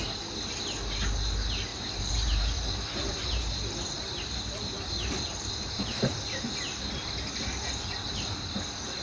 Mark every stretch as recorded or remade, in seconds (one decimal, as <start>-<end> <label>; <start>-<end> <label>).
0.0-1.7 recorded; 1.7-6.9 remade; 6.9-9.0 recorded

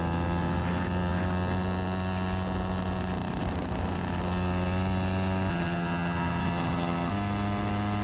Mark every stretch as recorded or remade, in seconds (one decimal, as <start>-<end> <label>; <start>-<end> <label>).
0.0-5.5 recorded; 5.5-7.1 remade; 7.1-8.0 recorded

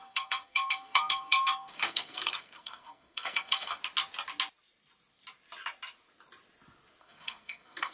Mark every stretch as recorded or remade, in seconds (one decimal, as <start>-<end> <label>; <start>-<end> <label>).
0.0-3.8 remade; 3.8-7.0 recorded; 7.0-7.9 remade

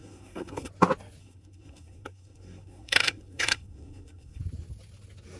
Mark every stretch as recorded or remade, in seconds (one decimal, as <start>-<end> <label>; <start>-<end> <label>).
0.0-0.7 remade; 0.7-1.2 recorded; 1.2-4.4 remade; 4.4-5.4 recorded

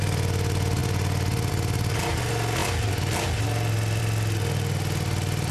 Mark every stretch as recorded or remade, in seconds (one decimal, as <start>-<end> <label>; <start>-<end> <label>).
0.0-5.5 recorded

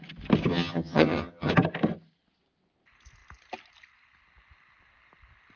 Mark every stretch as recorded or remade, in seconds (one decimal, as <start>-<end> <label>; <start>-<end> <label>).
0.0-0.5 recorded; 0.5-1.5 remade; 1.5-5.6 recorded